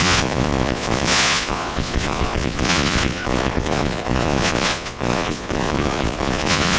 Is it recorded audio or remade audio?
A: remade